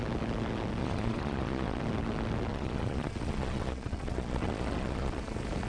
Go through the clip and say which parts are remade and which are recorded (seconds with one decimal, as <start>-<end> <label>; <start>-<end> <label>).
0.0-0.8 recorded; 0.8-1.8 remade; 1.8-2.5 recorded; 2.5-5.2 remade; 5.2-5.7 recorded